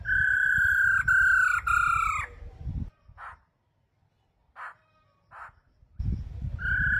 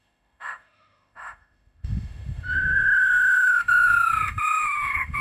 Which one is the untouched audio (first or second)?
first